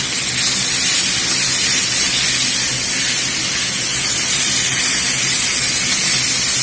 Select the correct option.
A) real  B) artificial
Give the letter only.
A